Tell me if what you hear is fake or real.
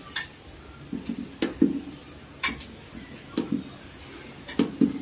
real